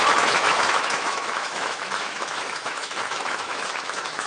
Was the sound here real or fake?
fake